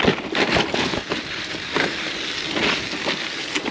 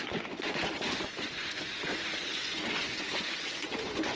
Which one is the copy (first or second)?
second